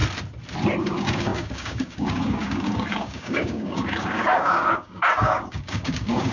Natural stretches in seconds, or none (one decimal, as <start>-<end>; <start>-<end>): 0.0-0.8